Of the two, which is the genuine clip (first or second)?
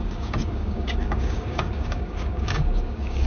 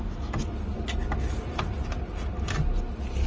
second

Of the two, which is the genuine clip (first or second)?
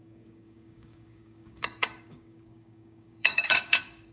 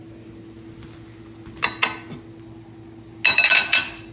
second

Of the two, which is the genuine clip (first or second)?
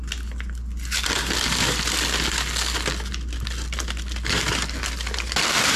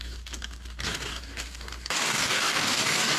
first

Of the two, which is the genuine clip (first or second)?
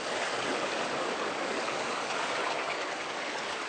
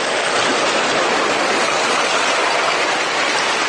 second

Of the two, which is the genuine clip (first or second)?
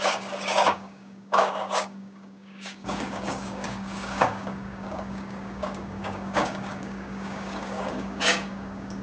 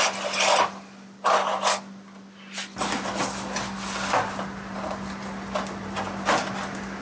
second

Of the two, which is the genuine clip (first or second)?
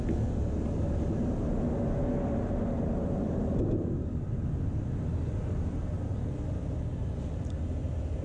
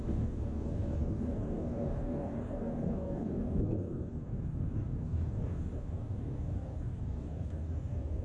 first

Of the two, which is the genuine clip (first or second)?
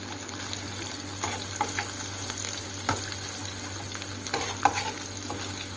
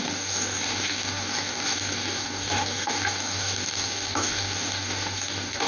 first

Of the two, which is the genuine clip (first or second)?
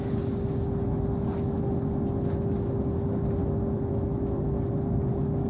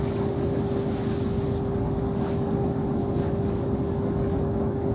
first